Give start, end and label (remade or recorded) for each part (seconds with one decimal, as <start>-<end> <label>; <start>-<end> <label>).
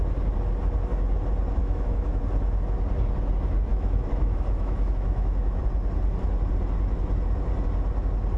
0.0-1.6 recorded; 1.6-2.2 remade; 2.2-3.7 recorded; 3.7-5.6 remade; 5.6-8.4 recorded